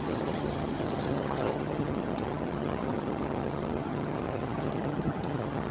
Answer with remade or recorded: remade